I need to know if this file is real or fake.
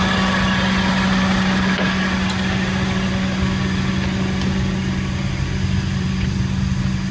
real